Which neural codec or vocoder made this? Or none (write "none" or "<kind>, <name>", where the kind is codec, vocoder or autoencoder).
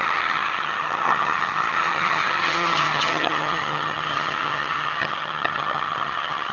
vocoder, HiFi-GAN